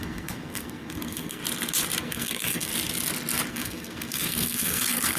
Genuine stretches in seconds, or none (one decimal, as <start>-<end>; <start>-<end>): 1.4-2.0; 2.7-3.5